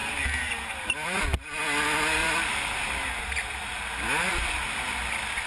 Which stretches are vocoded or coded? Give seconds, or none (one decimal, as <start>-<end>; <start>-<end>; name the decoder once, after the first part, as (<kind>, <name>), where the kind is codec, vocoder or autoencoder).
0.0-1.2 (vocoder, BigVGAN v2); 2.2-2.7